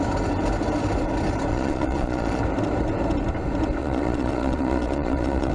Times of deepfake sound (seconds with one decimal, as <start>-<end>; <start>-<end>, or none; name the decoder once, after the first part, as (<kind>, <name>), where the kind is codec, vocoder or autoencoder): 1.5-2.4 (vocoder, Vocos); 3.8-5.5